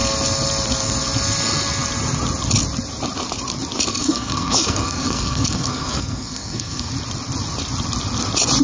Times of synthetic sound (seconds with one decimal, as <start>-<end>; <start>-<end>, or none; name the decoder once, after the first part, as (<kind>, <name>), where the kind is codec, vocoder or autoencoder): 3.9-6.9 (codec, SNAC)